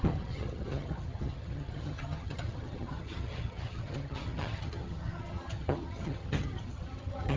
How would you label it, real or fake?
fake